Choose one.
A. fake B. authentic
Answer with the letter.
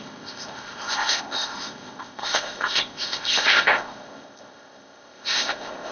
A